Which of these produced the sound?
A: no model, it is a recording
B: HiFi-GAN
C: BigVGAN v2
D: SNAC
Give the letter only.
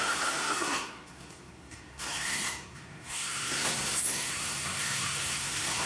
D